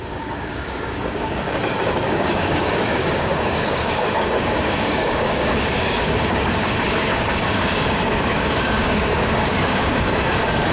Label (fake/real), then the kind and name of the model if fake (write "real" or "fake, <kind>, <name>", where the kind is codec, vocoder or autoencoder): fake, codec, DAC